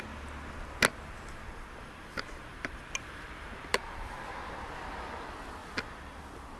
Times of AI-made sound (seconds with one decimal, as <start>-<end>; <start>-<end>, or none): 1.8-2.7; 3.7-4.2